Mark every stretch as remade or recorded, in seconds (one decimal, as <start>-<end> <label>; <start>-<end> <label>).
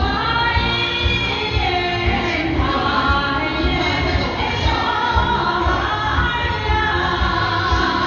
0.0-3.5 recorded; 3.5-5.6 remade; 5.6-8.1 recorded